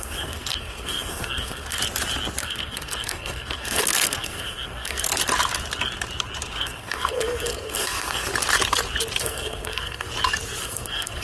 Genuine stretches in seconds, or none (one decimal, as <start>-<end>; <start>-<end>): 1.8-2.4; 5.1-6.6; 8.3-9.2; 10.1-10.6